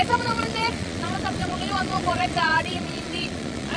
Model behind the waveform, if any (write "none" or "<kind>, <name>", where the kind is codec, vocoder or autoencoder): vocoder, Vocos